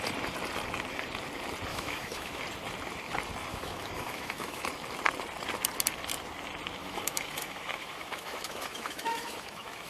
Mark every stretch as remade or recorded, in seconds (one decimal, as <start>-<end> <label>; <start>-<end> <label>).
0.0-1.7 recorded; 1.7-2.4 remade; 2.4-3.5 recorded; 3.5-4.7 remade; 4.7-6.8 recorded; 6.8-9.9 remade